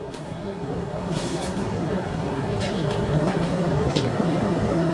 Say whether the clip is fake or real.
fake